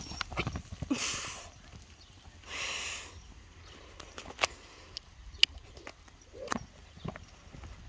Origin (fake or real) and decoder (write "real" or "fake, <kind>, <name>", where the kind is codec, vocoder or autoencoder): real